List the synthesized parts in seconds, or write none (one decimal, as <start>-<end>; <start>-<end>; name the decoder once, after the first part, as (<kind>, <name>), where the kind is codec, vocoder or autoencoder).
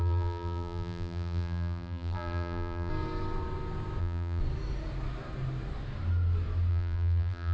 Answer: 0.0-2.9 (vocoder, BigVGAN v2); 4.0-4.4; 6.7-7.5